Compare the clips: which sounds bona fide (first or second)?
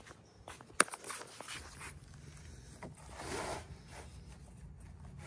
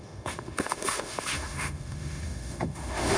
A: first